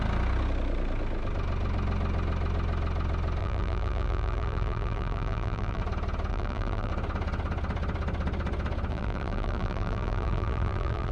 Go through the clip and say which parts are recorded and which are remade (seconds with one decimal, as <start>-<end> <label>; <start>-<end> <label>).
0.0-3.4 recorded; 3.4-5.8 remade; 5.8-6.3 recorded; 6.3-6.9 remade; 6.9-8.9 recorded; 8.9-11.1 remade